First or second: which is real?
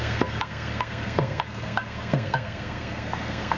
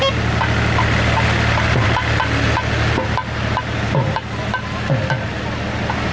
second